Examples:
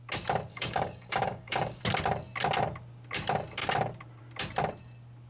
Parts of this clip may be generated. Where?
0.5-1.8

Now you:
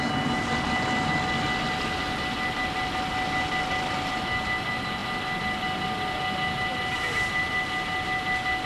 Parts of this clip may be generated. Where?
none

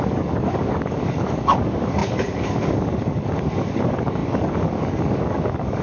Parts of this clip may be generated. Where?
0.0-5.8

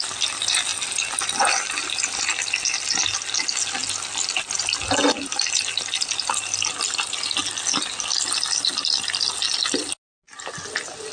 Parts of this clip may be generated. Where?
none

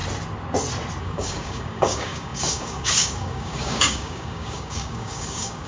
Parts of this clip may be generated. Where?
1.0-5.7

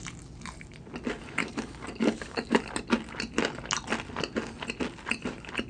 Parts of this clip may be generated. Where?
1.4-2.6

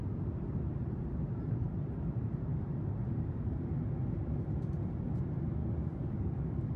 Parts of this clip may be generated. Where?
5.6-6.8

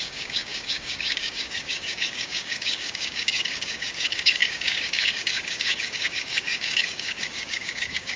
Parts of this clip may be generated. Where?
0.0-8.2